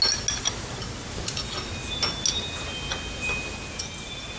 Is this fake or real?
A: real